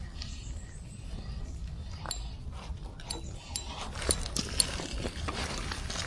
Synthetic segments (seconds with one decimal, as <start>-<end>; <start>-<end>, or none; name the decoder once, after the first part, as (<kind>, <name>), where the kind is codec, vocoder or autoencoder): none